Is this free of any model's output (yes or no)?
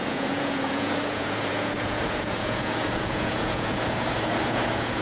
no